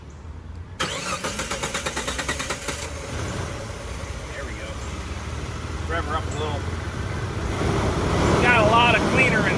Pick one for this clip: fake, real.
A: fake